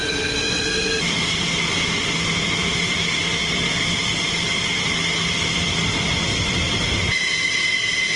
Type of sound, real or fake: real